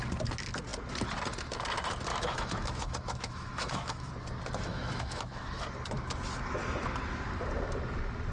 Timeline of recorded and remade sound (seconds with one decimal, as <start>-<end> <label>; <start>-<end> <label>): 0.0-2.1 recorded; 2.1-4.1 remade; 4.1-4.7 recorded; 4.7-5.6 remade; 5.6-8.3 recorded